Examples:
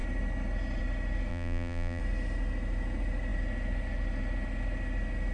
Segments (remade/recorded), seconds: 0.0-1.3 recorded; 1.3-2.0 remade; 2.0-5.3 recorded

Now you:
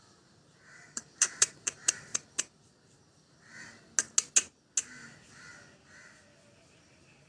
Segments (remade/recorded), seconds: 0.0-2.1 remade; 2.1-6.5 recorded; 6.5-7.3 remade